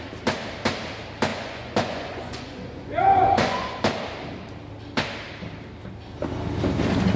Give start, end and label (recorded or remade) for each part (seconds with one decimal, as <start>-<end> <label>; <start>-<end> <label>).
0.0-1.3 recorded; 1.3-3.8 remade; 3.8-7.2 recorded